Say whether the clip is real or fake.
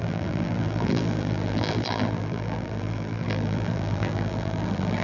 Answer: fake